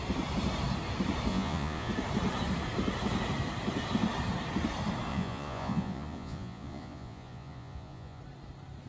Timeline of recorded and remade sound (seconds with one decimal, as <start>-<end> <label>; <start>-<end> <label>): 0.0-1.3 recorded; 1.3-1.9 remade; 1.9-5.1 recorded; 5.1-8.2 remade; 8.2-8.9 recorded